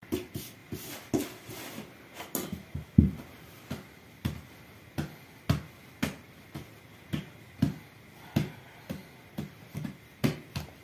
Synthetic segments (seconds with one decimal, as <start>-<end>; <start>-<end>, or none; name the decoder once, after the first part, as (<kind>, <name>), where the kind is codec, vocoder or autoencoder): 9.0-9.9 (vocoder, BigVGAN v2)